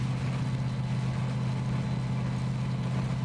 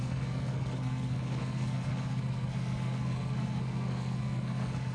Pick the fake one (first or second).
second